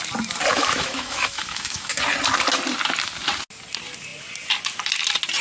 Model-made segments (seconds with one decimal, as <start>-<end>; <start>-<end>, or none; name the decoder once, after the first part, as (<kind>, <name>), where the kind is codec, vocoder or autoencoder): 0.5-2.0 (autoencoder, DAC-VAE)